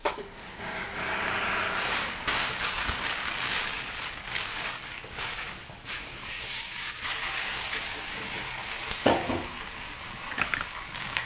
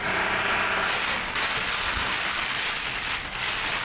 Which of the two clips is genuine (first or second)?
second